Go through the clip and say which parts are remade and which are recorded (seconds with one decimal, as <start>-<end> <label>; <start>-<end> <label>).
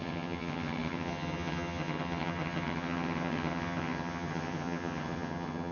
0.0-5.7 remade